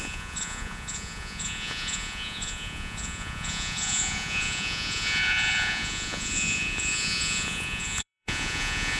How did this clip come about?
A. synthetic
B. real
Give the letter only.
A